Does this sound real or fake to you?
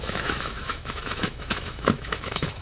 fake